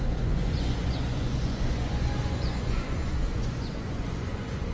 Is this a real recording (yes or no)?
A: no